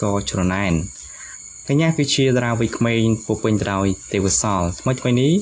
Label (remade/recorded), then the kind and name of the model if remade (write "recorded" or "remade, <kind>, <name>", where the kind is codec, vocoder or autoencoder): recorded